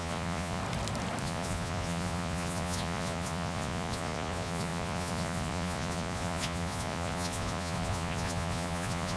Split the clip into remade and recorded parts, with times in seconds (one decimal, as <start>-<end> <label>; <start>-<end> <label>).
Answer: 0.0-0.6 remade; 0.6-1.2 recorded; 1.2-9.2 remade